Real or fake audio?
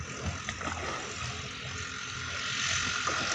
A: real